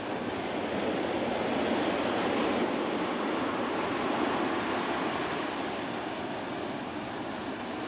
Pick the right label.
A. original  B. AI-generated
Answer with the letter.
A